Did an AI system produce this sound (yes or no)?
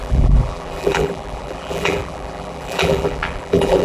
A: yes